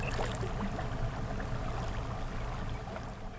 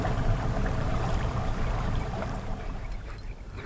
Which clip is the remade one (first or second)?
second